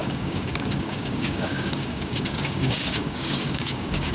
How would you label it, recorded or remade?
remade